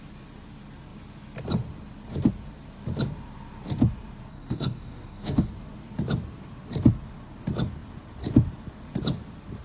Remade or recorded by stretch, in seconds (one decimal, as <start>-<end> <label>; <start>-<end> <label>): 0.0-4.3 recorded; 4.3-5.5 remade; 5.5-9.6 recorded